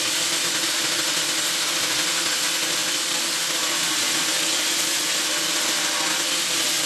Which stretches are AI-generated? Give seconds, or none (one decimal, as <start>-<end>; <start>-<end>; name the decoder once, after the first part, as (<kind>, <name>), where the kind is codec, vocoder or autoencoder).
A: none